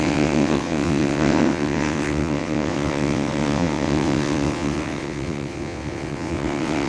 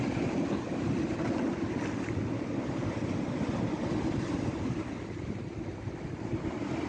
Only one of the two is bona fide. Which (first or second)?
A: second